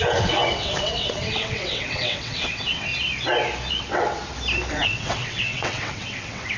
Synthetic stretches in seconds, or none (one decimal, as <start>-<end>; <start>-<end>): 0.0-2.9; 3.7-4.2; 4.7-6.6